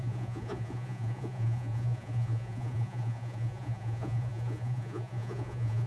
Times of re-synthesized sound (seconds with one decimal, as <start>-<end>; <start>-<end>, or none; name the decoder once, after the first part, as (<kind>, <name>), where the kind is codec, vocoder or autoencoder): 0.0-5.9 (vocoder, Vocos)